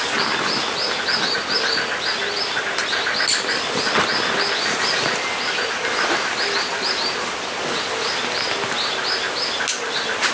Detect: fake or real real